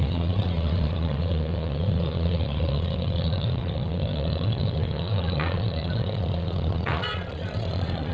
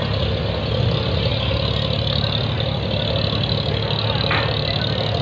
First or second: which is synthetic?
first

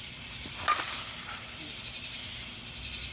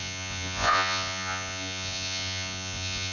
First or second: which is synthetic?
second